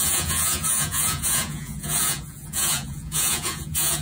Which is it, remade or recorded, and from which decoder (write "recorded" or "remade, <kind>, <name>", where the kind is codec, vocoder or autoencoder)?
remade, vocoder, Vocos